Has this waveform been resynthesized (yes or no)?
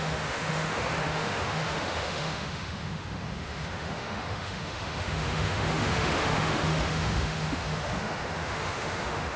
yes